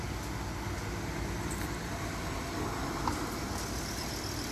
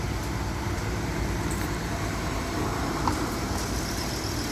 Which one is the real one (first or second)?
first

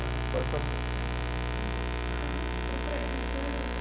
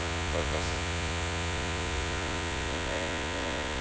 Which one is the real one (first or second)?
first